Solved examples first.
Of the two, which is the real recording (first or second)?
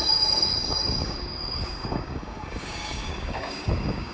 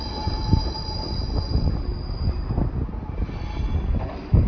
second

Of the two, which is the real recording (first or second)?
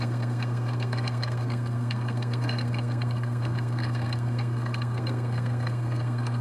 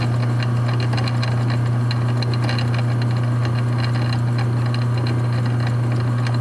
second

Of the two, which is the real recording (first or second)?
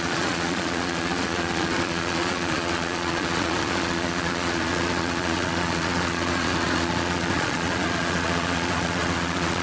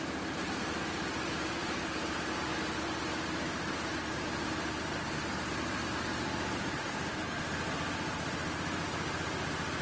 second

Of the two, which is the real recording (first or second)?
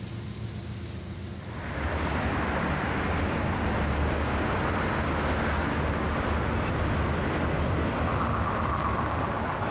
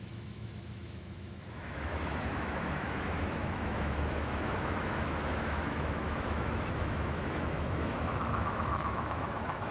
first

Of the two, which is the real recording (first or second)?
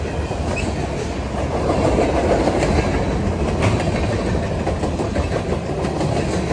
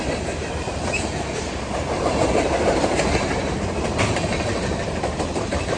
first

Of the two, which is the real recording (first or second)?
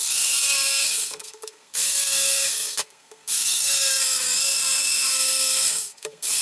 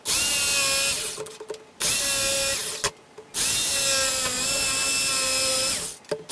second